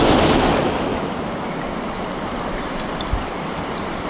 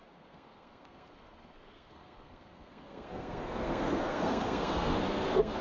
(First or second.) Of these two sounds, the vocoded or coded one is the second